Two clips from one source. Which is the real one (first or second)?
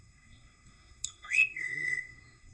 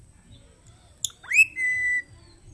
second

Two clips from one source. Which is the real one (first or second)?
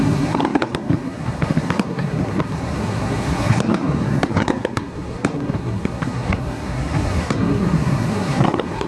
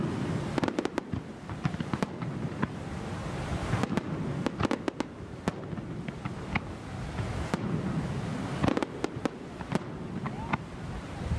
second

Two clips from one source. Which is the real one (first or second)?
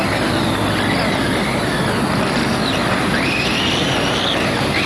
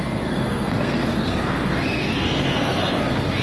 first